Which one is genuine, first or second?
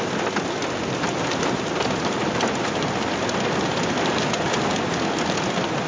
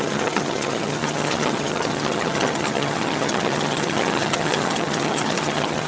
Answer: first